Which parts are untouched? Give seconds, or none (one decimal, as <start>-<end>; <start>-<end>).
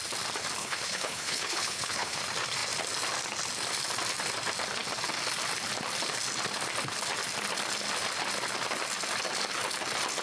0.0-0.6; 2.2-10.2